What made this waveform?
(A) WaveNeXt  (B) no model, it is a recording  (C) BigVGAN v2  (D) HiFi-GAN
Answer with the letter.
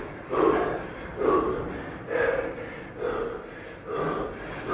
B